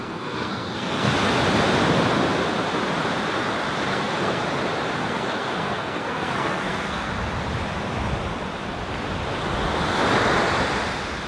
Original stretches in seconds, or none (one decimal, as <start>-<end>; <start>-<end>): 1.1-3.9; 4.4-5.0; 7.1-11.3